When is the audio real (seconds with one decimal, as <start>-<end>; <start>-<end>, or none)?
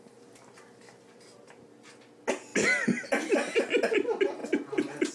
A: 0.0-5.1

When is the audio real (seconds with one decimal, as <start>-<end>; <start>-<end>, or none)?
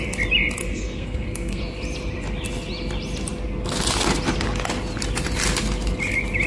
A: 0.0-0.6; 1.6-6.5